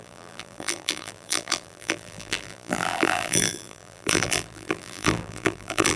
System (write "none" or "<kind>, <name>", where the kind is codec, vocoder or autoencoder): vocoder, BigVGAN v2